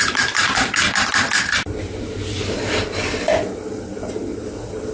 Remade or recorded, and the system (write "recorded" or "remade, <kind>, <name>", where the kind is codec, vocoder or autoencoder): recorded